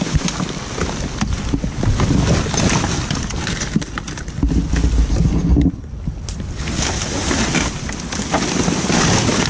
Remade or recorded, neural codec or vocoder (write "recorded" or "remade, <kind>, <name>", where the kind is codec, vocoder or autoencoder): recorded